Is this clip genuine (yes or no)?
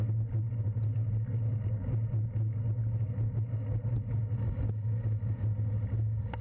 yes